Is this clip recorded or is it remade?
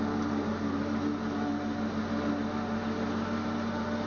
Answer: recorded